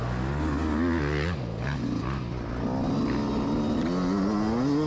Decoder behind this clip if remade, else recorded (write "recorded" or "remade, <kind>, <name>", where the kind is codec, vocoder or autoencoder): recorded